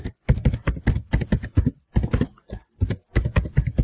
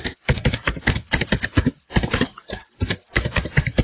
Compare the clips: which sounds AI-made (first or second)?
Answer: second